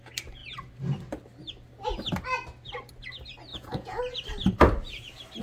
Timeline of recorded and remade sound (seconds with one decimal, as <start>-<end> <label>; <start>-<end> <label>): 0.0-3.5 recorded; 3.5-4.0 remade; 4.0-5.4 recorded